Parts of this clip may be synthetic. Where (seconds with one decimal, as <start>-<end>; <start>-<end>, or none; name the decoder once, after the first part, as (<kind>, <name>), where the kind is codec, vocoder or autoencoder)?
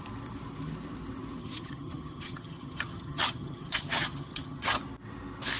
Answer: 1.4-4.8 (vocoder, HiFi-GAN)